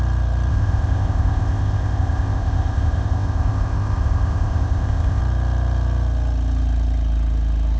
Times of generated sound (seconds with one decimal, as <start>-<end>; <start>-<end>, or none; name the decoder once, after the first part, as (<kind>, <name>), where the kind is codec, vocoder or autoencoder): 0.5-5.2 (codec, ZipCodec)